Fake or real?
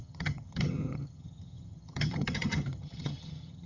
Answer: fake